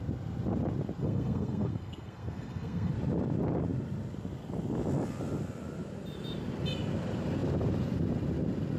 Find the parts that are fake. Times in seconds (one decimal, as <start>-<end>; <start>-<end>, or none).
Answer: 1.0-2.9